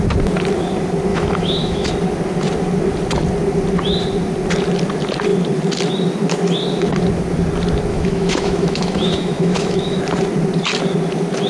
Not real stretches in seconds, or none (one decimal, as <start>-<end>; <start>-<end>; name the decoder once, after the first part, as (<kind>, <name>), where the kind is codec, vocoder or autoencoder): 1.1-1.9 (autoencoder, DAC-VAE); 7.9-10.0